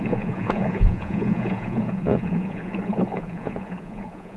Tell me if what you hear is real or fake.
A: fake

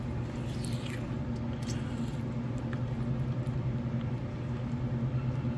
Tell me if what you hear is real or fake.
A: real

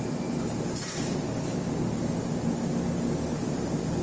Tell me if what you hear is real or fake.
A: real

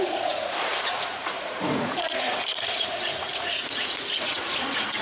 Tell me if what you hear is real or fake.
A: fake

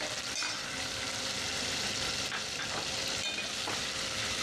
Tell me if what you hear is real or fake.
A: real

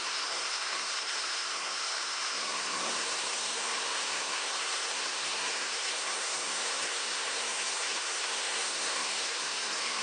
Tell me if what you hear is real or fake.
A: fake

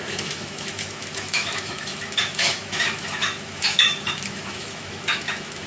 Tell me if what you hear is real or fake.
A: fake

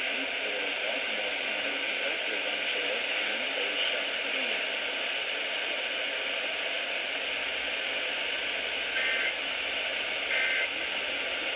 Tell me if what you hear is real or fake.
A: real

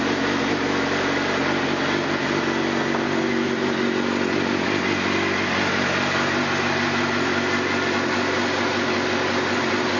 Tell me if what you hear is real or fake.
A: real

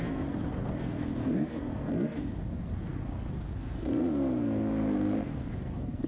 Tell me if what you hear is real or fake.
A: fake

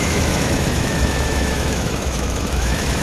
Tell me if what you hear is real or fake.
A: fake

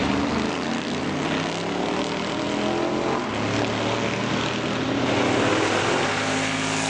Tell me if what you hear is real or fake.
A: real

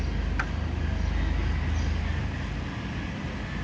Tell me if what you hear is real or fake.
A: real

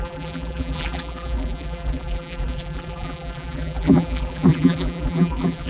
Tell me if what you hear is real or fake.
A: fake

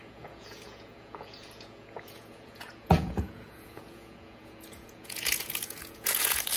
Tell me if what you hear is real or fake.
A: fake